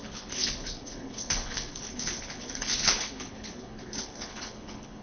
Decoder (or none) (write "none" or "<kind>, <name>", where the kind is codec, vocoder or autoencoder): codec, HILCodec